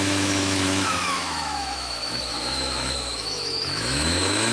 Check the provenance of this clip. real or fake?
fake